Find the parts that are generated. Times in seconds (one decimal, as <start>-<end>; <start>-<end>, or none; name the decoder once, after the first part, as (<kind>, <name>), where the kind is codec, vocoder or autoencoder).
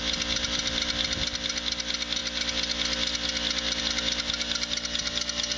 none